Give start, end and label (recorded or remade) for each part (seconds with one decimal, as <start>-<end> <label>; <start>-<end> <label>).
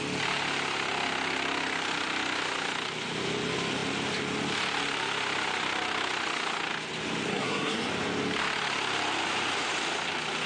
0.0-7.3 recorded; 7.3-7.9 remade; 7.9-10.5 recorded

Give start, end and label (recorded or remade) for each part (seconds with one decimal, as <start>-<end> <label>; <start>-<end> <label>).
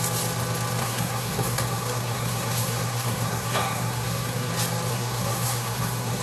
0.0-0.8 recorded; 0.8-4.5 remade; 4.5-4.9 recorded; 4.9-6.2 remade